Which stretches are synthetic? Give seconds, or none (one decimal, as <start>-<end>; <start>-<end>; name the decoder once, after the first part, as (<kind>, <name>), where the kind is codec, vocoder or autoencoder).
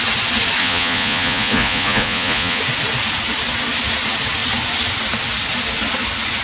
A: 0.6-2.6 (vocoder, Vocos)